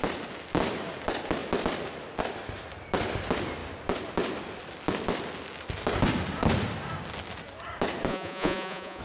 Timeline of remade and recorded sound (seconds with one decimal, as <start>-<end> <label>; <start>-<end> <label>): 0.0-8.1 recorded; 8.1-9.0 remade